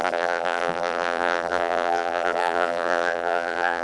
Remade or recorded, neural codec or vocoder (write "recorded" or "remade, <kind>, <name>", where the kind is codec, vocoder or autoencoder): remade, vocoder, BigVGAN v2